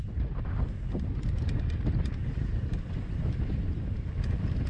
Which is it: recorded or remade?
recorded